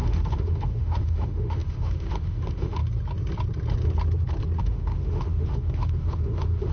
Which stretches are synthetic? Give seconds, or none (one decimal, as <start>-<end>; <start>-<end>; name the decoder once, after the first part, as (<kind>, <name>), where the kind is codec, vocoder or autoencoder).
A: 0.0-2.8 (autoencoder, DAC-VAE); 4.6-6.7